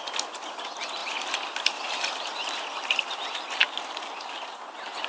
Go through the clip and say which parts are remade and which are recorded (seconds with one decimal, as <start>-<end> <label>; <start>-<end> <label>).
0.0-1.0 recorded; 1.0-3.6 remade; 3.6-5.1 recorded